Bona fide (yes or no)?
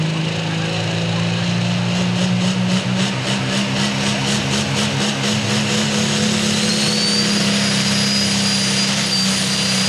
yes